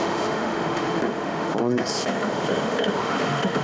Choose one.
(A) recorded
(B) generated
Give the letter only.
B